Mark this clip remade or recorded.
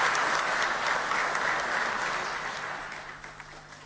recorded